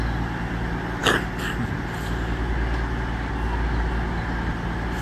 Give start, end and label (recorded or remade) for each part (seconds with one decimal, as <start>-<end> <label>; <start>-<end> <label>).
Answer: 0.0-5.0 recorded